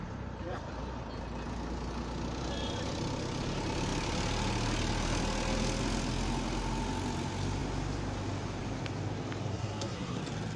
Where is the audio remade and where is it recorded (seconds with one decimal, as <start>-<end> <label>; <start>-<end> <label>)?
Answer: 0.0-9.5 recorded; 9.5-10.2 remade; 10.2-10.6 recorded